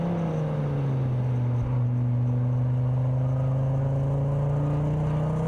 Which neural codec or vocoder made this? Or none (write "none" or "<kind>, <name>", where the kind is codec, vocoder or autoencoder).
none